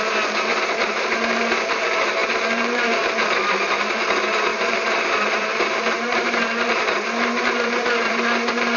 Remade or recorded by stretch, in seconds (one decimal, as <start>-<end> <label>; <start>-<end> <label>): 0.0-0.5 recorded; 0.5-1.4 remade; 1.4-2.2 recorded; 2.2-3.2 remade; 3.2-4.5 recorded; 4.5-8.8 remade